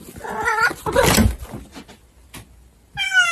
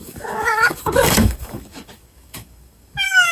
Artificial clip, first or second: second